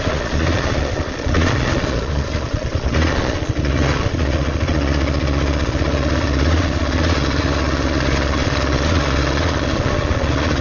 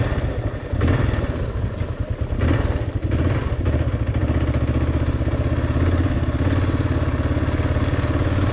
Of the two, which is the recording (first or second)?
second